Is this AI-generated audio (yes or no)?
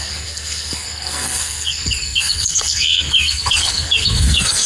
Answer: yes